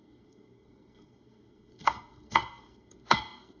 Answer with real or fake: fake